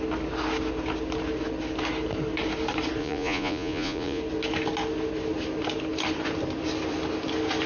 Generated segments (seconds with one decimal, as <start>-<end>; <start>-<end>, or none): 3.0-4.2